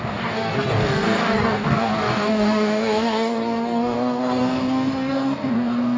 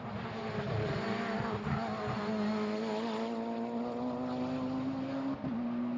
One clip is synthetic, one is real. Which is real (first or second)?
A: second